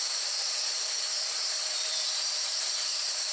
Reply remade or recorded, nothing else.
remade